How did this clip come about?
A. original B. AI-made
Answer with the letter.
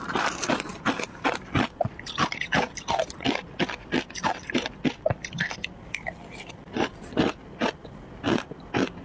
B